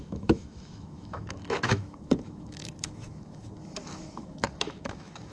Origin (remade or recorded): remade